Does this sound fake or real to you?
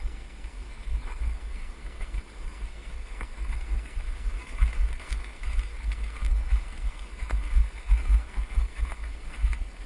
fake